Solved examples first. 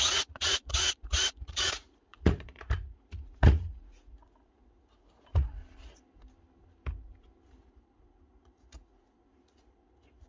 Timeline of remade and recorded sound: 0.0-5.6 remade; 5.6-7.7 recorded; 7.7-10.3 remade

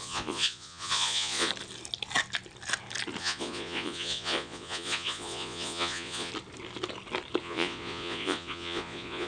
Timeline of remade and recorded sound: 0.0-1.5 remade; 1.5-3.2 recorded; 3.2-6.3 remade; 6.3-7.4 recorded; 7.4-9.3 remade